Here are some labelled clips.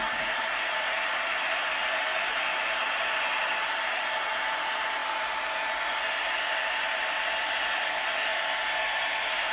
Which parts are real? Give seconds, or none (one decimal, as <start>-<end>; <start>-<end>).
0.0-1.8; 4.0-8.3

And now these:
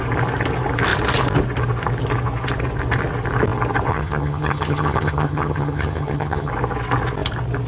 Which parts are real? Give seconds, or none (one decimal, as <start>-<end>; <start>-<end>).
0.0-3.9; 6.5-7.7

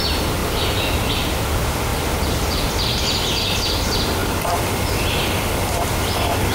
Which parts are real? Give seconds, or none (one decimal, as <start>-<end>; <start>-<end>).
0.0-4.2; 5.2-6.5